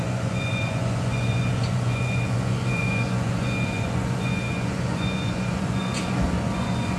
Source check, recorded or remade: remade